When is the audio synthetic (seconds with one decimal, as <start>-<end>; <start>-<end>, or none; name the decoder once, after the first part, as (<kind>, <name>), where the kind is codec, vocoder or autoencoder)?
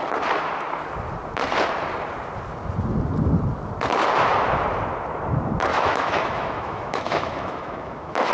5.7-8.3 (autoencoder, DAC-VAE)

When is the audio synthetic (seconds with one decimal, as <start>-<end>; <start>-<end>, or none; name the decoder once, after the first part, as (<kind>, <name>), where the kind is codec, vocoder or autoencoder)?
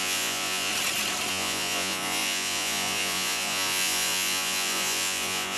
0.0-0.7 (vocoder, Vocos); 1.3-5.6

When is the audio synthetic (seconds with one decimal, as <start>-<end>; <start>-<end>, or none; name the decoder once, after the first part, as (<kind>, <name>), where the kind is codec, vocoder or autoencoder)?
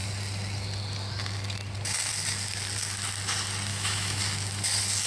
3.7-4.2 (autoencoder, DAC-VAE)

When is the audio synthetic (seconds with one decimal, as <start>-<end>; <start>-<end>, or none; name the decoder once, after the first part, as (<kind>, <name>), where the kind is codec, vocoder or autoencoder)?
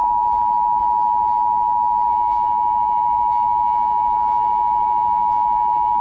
2.1-6.0 (autoencoder, DAC-VAE)